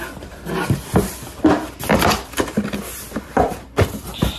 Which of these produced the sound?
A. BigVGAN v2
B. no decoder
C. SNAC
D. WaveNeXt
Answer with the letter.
A